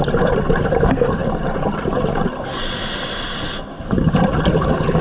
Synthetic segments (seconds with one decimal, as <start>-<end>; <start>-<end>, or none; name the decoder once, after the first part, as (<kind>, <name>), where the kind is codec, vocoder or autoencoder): none